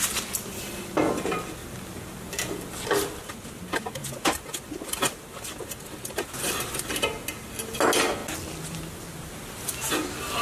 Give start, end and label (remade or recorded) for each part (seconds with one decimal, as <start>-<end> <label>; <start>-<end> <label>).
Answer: 0.0-10.4 recorded

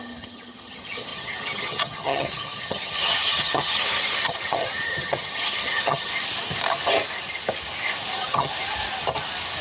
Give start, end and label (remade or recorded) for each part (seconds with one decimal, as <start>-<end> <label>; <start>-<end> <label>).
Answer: 0.0-6.1 remade; 6.1-8.1 recorded; 8.1-8.5 remade; 8.5-9.6 recorded

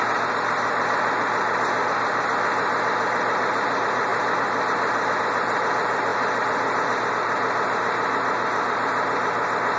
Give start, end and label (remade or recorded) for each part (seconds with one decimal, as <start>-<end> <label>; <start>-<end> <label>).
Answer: 0.0-6.1 recorded; 6.1-7.0 remade; 7.0-9.8 recorded

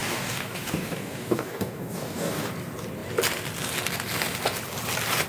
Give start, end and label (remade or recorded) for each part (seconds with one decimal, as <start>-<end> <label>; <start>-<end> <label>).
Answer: 0.0-2.5 remade; 2.5-5.3 recorded